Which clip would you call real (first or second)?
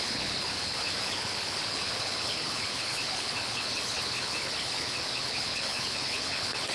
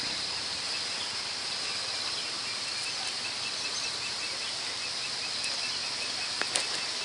second